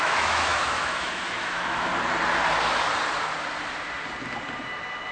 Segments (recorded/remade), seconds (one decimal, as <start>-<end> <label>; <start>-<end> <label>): 0.0-1.9 remade; 1.9-5.1 recorded